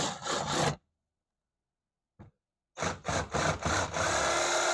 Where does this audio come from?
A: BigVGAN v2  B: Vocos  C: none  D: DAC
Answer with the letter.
C